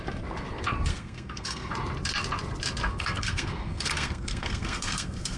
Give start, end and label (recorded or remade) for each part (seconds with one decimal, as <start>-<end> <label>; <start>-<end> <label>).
0.0-0.9 recorded; 0.9-1.7 remade; 1.7-2.9 recorded; 2.9-5.4 remade